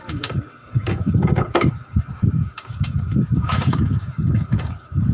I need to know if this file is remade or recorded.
remade